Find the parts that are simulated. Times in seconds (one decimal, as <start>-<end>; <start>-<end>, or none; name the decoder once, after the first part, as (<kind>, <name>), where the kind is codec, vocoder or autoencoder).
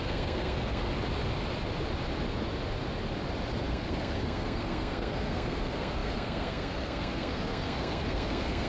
0.0-0.9 (codec, SNAC); 3.7-8.7